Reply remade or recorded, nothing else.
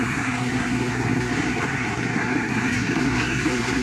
remade